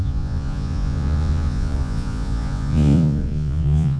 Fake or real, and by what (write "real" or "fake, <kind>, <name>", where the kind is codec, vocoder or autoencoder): fake, vocoder, Vocos